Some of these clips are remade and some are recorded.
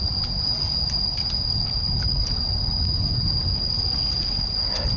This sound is recorded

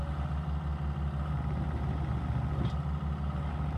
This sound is recorded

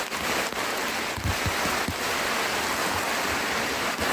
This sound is recorded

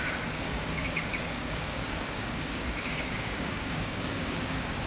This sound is remade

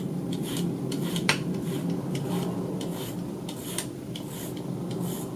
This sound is recorded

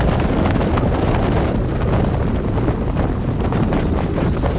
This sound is recorded